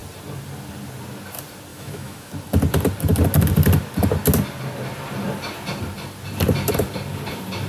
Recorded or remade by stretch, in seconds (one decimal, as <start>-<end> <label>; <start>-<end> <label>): 0.0-1.7 recorded; 1.7-2.3 remade; 2.3-7.7 recorded